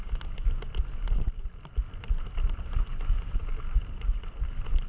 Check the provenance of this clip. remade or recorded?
recorded